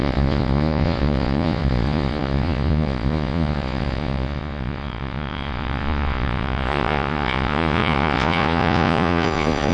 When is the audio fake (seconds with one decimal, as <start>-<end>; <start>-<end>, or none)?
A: 0.0-9.7